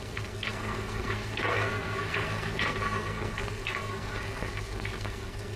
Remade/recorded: remade